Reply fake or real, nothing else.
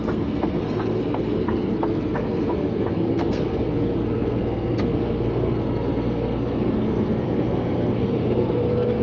fake